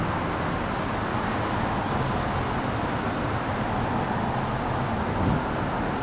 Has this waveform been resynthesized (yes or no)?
no